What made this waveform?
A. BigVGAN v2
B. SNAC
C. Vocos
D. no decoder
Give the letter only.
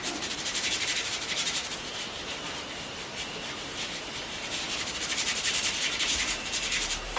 A